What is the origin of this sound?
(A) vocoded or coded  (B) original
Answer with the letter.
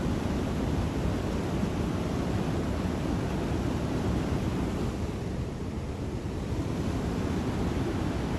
B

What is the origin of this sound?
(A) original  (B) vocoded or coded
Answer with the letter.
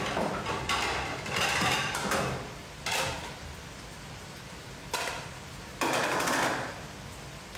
B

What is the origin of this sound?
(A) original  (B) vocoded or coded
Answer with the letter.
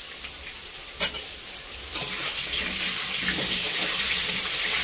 B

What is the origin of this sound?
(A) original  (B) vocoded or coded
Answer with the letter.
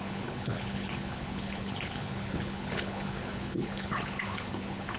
B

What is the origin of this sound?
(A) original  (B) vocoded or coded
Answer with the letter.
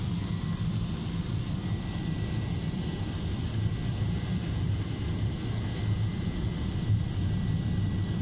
A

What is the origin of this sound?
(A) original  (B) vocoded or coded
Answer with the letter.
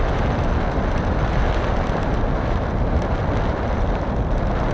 A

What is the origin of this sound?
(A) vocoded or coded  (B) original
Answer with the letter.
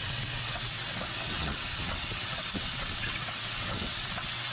A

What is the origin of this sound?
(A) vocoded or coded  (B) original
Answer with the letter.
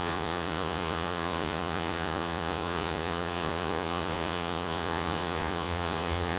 A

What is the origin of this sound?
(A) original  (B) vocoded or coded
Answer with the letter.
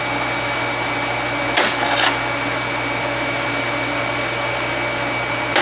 A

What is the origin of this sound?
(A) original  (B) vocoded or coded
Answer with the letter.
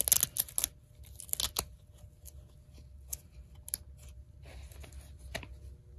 A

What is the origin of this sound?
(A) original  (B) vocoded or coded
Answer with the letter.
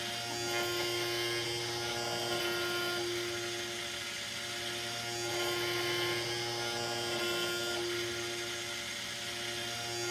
A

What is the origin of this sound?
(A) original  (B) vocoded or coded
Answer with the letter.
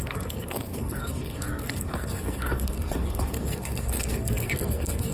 B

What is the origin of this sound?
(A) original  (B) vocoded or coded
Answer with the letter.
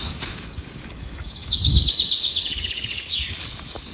B